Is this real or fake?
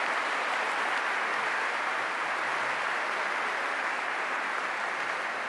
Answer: real